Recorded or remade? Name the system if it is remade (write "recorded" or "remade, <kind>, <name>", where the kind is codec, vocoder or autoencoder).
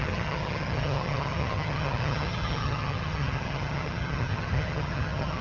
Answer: remade, vocoder, HiFi-GAN